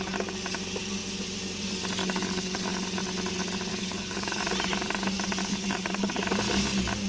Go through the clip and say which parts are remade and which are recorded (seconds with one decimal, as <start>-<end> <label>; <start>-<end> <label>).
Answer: 0.0-2.0 recorded; 2.0-2.7 remade; 2.7-3.7 recorded; 3.7-4.4 remade; 4.4-5.5 recorded; 5.5-6.2 remade; 6.2-7.1 recorded